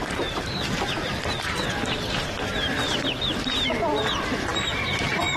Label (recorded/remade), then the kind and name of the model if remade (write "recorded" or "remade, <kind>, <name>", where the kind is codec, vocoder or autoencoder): remade, vocoder, BigVGAN v2